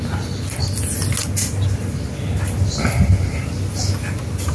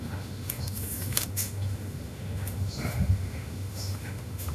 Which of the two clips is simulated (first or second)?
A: second